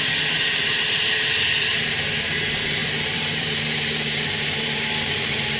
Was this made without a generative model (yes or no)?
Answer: no